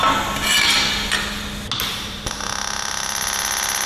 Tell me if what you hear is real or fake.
real